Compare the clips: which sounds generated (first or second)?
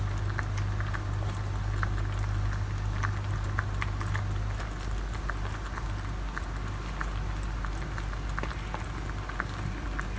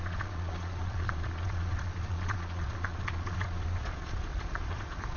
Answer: second